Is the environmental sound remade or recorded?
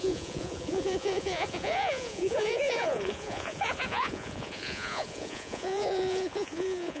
remade